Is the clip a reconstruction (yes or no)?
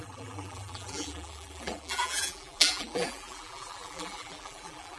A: yes